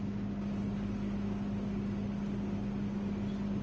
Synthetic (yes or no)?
no